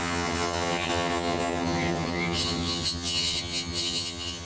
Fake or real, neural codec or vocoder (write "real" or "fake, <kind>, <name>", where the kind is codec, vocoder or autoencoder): fake, vocoder, HiFi-GAN